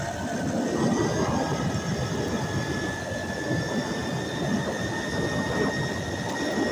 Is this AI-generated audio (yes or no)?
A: no